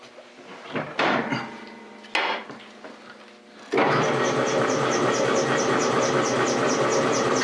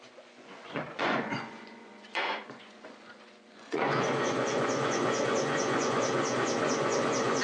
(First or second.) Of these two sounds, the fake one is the second